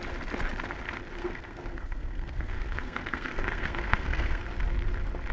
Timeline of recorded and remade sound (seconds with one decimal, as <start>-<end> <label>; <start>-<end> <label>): 0.0-1.2 recorded; 1.2-4.4 remade; 4.4-5.3 recorded

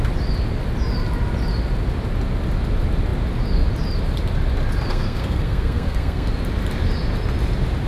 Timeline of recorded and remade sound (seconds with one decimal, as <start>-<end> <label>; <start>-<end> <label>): 0.0-4.9 recorded; 4.9-6.3 remade; 6.3-7.9 recorded

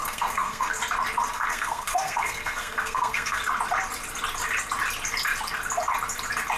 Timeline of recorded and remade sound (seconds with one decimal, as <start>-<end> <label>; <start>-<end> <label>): 0.0-0.8 remade; 0.8-1.3 recorded; 1.3-3.4 remade; 3.4-6.6 recorded